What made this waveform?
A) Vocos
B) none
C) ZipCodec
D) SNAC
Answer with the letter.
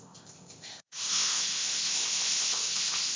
C